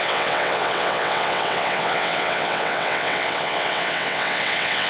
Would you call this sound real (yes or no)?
no